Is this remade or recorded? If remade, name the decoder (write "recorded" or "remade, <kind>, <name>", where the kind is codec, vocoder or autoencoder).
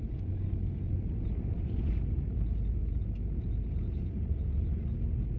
recorded